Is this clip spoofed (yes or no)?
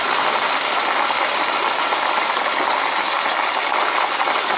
no